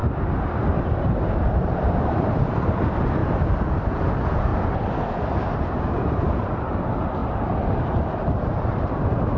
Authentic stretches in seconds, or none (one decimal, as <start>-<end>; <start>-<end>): 0.0-1.6; 3.2-3.9; 4.5-5.5